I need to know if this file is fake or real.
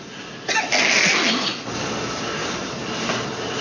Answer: real